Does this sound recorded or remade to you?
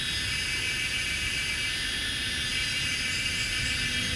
recorded